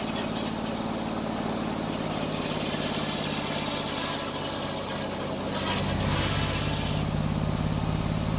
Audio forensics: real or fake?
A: real